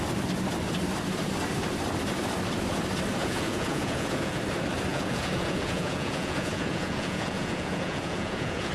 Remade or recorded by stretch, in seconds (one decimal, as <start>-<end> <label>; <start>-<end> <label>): 0.0-3.2 recorded; 3.2-4.4 remade; 4.4-4.9 recorded; 4.9-8.7 remade